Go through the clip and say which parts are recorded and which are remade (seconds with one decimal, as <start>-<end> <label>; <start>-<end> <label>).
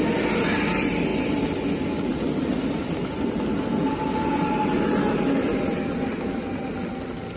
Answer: 0.0-7.4 recorded